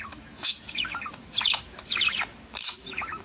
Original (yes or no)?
no